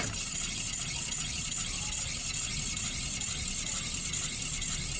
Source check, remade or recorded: recorded